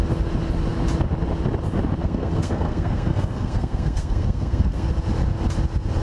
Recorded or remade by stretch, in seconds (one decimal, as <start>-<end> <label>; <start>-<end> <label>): 0.0-2.0 recorded; 2.0-4.9 remade; 4.9-6.0 recorded

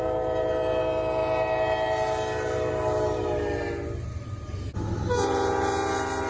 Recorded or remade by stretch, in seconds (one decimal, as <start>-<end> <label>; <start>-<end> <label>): 0.0-6.3 recorded

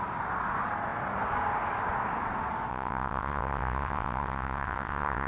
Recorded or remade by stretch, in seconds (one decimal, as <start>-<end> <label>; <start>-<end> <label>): 0.0-2.7 recorded; 2.7-5.3 remade